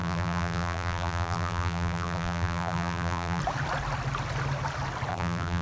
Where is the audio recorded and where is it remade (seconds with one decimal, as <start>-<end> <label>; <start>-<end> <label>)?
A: 0.0-3.4 remade; 3.4-5.1 recorded; 5.1-5.6 remade